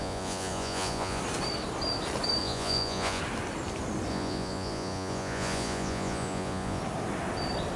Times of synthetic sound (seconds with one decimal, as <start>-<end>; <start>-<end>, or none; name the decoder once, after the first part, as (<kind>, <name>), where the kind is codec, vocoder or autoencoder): 0.0-1.2 (vocoder, Vocos); 2.4-3.2; 4.1-6.8